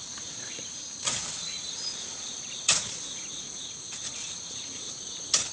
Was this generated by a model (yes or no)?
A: yes